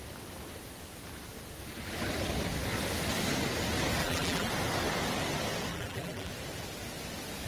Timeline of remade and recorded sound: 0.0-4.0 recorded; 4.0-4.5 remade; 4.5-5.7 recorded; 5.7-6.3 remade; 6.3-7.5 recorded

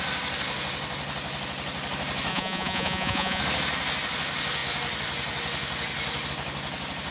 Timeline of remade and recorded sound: 0.0-2.3 recorded; 2.3-3.4 remade; 3.4-7.1 recorded